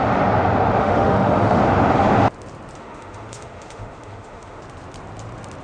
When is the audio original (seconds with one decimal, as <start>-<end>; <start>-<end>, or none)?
0.0-0.8; 1.6-2.8; 4.6-5.6